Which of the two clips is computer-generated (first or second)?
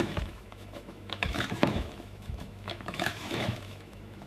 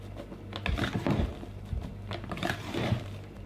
first